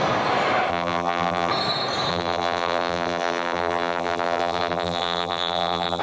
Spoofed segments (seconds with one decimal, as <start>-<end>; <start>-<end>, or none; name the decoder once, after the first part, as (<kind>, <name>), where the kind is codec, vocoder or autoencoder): 0.7-1.5 (vocoder, BigVGAN v2); 2.1-6.0